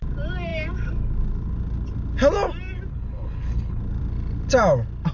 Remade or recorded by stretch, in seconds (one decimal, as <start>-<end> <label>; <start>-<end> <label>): 0.0-2.9 recorded; 2.9-3.8 remade; 3.8-5.1 recorded